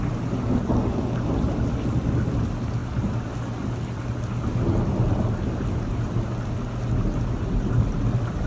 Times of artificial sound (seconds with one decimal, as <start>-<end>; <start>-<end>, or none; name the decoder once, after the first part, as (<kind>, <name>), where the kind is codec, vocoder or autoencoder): none